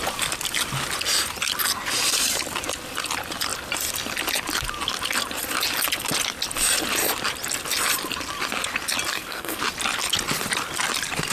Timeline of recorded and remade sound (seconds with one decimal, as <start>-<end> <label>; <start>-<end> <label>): 0.0-9.1 recorded; 9.1-9.6 remade; 9.6-11.3 recorded